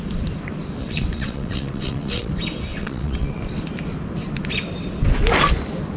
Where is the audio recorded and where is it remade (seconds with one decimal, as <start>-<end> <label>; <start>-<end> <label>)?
0.0-0.8 recorded; 0.8-2.3 remade; 2.3-2.7 recorded; 2.7-3.4 remade; 3.4-6.0 recorded